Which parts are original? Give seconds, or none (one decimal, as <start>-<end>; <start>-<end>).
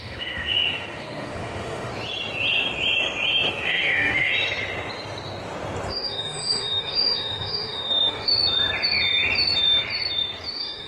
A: 1.9-3.5; 4.3-5.9; 8.3-10.5